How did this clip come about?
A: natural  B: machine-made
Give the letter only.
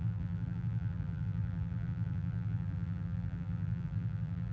B